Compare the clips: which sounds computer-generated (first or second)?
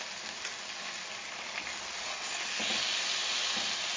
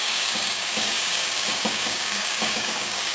second